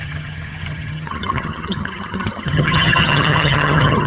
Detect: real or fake fake